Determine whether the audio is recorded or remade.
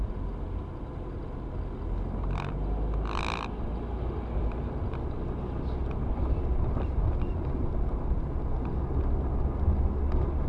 recorded